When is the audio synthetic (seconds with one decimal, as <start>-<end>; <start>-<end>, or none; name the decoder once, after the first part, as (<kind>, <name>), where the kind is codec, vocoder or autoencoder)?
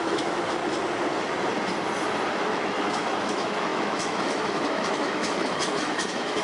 0.0-0.6 (autoencoder, DAC-VAE); 2.3-6.4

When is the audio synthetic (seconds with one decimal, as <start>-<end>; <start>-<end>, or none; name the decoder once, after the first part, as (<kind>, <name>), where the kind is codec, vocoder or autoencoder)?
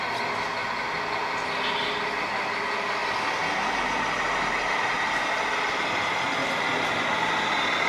none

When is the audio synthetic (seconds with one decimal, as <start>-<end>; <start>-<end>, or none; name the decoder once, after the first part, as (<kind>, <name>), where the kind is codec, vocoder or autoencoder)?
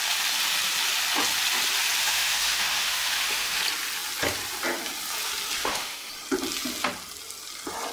2.0-3.6 (autoencoder, DAC-VAE); 5.6-6.1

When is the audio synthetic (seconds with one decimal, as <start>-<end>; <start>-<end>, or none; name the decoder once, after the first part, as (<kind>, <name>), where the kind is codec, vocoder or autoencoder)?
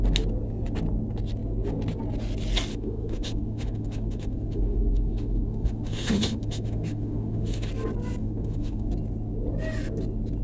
2.7-7.7 (autoencoder, DAC-VAE); 8.2-8.9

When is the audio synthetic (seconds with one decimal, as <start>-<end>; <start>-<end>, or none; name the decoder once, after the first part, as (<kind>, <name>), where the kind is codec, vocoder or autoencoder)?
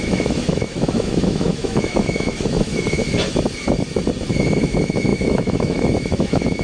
0.0-3.0 (autoencoder, DAC-VAE); 4.6-6.6